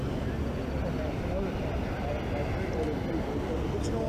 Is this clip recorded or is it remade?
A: recorded